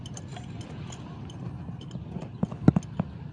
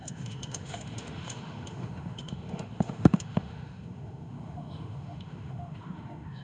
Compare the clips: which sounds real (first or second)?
first